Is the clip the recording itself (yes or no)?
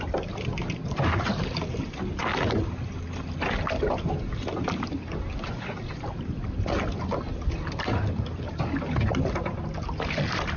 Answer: yes